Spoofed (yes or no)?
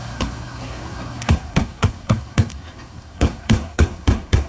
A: yes